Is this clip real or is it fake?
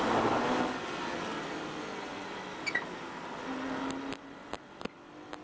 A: real